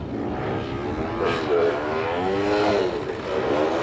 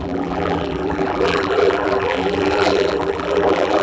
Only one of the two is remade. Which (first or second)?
second